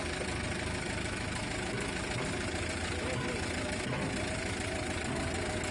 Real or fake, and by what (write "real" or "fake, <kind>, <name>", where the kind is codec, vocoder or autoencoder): real